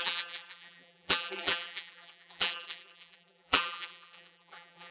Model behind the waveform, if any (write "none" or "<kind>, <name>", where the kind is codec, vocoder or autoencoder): vocoder, BigVGAN v2